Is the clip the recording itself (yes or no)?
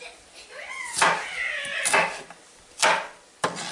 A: yes